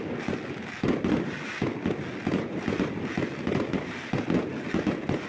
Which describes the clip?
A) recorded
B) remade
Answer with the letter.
A